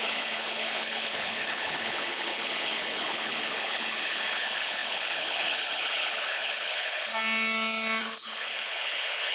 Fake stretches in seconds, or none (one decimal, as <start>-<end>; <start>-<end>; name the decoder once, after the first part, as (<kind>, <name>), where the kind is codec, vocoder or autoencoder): 0.0-7.1 (codec, HILCodec); 8.0-9.3